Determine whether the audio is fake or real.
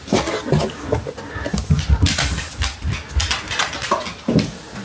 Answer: real